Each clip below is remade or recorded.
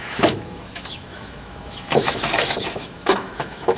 remade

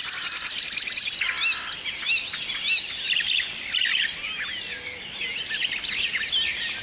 recorded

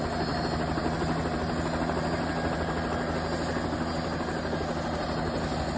recorded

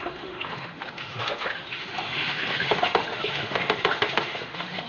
remade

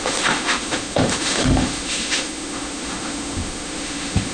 remade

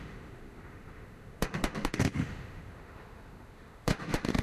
remade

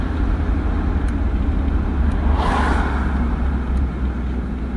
recorded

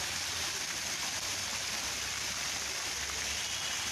recorded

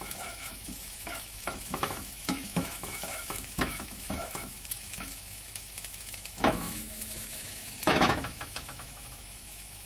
remade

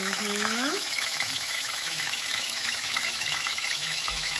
remade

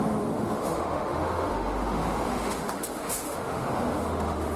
remade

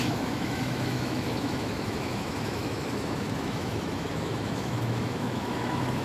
remade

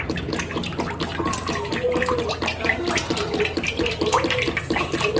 recorded